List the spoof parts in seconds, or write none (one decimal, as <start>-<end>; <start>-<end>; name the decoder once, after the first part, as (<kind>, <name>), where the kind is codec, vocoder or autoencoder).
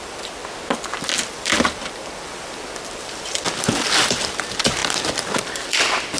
0.0-0.4 (vocoder, BigVGAN v2); 1.3-4.8; 5.4-6.2